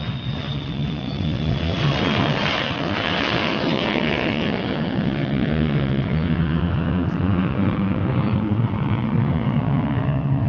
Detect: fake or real fake